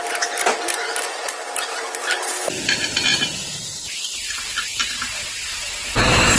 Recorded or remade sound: recorded